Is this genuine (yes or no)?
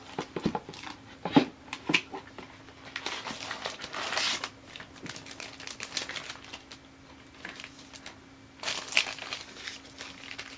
yes